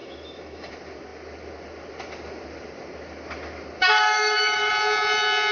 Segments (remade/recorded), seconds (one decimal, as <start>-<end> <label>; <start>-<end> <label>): 0.0-0.7 remade; 0.7-3.8 recorded; 3.8-4.7 remade; 4.7-5.5 recorded

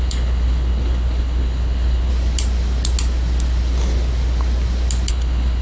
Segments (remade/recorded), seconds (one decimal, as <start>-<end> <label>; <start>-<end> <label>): 0.0-2.1 remade; 2.1-5.1 recorded; 5.1-5.6 remade

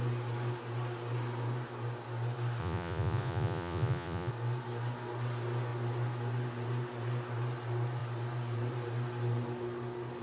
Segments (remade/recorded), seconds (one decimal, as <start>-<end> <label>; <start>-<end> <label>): 0.0-2.6 recorded; 2.6-4.3 remade; 4.3-10.2 recorded